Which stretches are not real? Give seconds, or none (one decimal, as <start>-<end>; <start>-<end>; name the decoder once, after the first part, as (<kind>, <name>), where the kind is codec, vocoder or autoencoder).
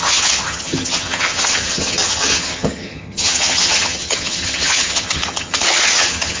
0.0-6.4 (vocoder, HiFi-GAN)